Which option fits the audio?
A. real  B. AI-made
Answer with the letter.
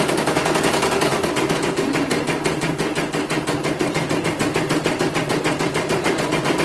A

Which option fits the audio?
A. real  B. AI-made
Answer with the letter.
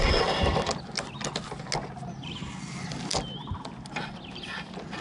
A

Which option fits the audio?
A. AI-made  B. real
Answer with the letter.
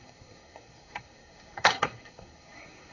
A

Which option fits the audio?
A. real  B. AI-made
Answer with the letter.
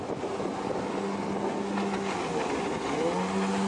A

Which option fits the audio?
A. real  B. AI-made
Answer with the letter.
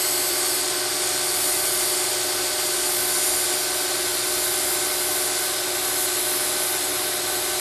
A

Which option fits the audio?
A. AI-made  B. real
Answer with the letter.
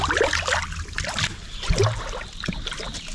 B